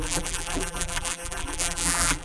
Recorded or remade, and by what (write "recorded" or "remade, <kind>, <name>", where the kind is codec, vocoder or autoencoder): remade, vocoder, BigVGAN v2